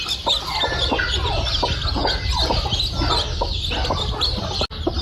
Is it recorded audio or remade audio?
recorded